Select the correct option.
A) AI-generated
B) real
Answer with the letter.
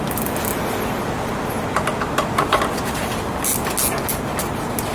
B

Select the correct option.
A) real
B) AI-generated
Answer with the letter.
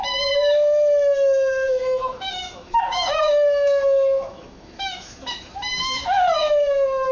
B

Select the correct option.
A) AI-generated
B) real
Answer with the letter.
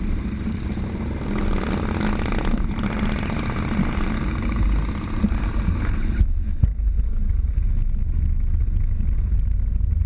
B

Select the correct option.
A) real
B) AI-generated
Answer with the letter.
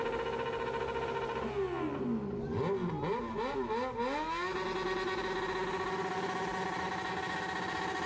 A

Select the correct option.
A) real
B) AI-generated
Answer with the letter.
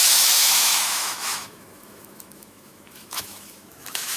B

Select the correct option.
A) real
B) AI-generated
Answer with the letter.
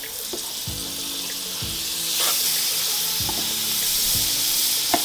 A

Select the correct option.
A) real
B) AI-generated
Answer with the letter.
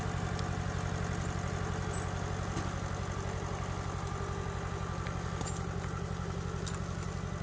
A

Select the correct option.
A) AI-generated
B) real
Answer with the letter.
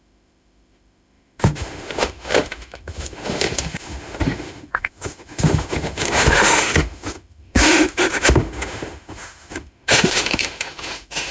A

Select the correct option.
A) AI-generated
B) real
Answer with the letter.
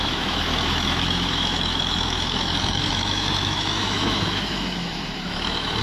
A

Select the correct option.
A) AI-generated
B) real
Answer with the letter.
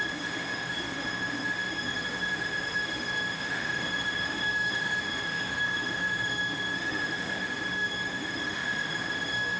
A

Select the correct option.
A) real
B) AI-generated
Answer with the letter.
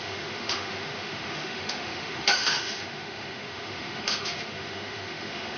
B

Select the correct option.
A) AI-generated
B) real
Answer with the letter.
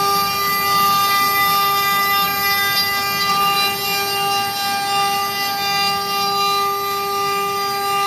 B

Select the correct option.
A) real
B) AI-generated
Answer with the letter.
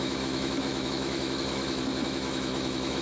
B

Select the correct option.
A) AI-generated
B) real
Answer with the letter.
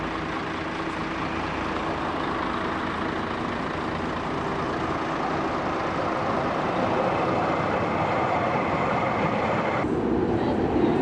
B